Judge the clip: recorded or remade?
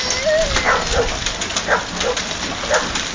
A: recorded